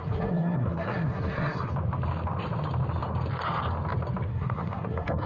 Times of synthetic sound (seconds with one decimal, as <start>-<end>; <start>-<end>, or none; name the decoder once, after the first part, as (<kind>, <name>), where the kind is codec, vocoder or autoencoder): 0.0-1.7 (codec, SNAC); 4.3-5.3